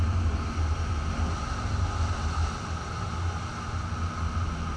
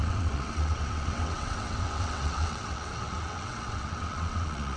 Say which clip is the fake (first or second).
second